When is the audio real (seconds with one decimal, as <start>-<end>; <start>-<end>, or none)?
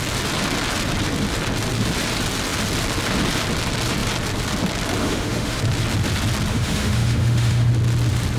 0.0-5.0; 5.6-6.5; 7.7-8.4